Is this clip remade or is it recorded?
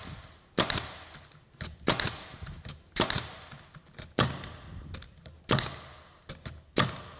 recorded